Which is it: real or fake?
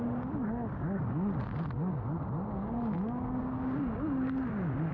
real